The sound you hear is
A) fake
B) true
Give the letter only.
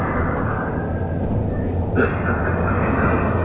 B